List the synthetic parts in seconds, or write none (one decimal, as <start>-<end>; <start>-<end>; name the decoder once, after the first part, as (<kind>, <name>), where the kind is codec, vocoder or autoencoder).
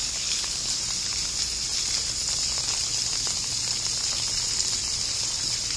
0.0-0.8 (codec, HILCodec)